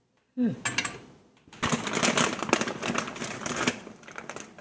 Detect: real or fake real